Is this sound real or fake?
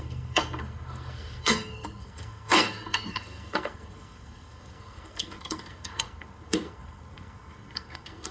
fake